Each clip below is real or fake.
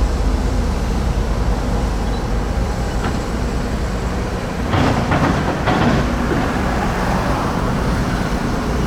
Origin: fake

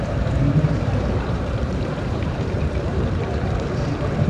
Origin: fake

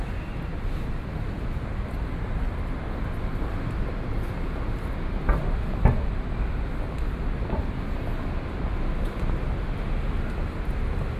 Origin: real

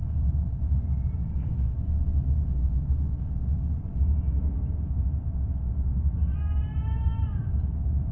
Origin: real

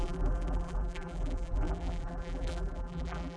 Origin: fake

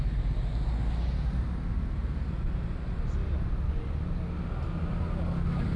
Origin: real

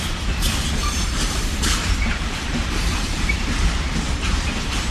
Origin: fake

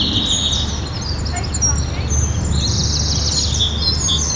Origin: real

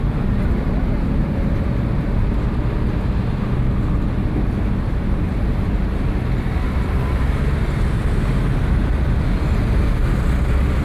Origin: real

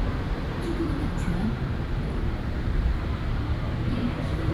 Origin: fake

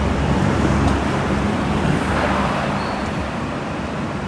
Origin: fake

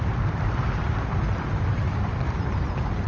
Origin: fake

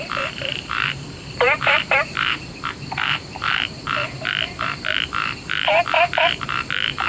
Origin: fake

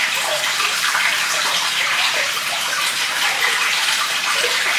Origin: fake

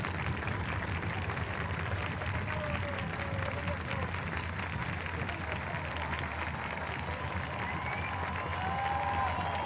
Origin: real